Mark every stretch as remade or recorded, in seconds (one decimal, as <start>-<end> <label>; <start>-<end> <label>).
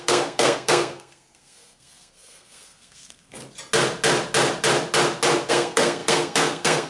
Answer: 0.0-3.4 remade; 3.4-5.5 recorded; 5.5-6.9 remade